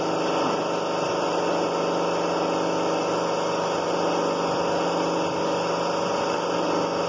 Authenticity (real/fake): real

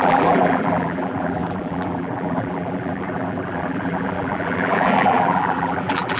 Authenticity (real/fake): fake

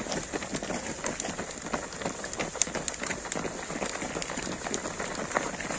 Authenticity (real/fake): real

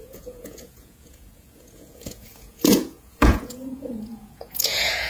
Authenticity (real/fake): fake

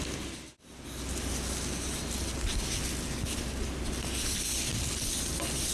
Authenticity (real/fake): real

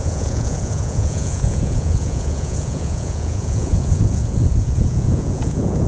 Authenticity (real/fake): fake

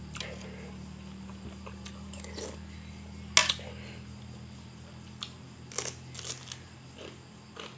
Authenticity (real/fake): real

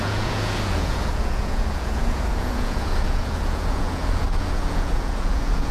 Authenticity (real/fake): fake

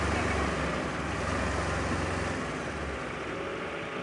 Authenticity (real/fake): real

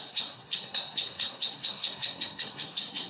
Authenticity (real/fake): fake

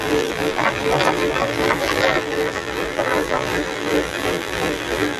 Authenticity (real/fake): fake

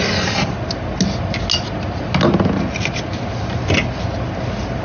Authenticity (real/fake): real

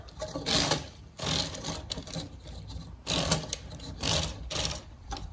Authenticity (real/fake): real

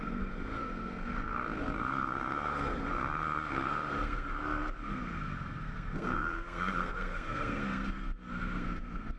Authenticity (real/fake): fake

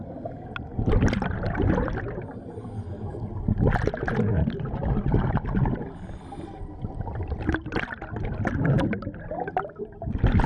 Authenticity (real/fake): real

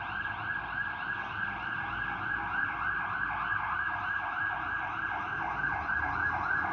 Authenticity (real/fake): real